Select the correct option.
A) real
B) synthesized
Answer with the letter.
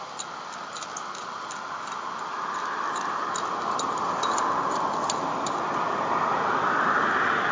A